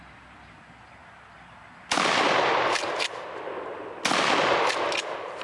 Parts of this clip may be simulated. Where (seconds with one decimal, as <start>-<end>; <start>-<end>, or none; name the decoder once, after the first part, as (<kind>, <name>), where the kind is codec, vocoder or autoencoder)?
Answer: none